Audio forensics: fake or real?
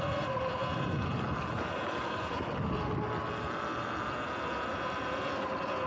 real